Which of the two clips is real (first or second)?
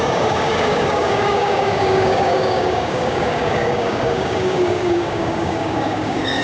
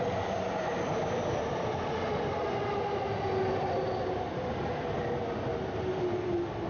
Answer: second